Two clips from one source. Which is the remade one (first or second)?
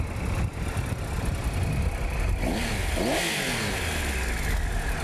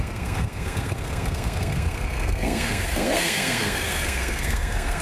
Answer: second